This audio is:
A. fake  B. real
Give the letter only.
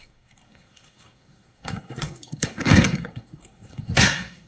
A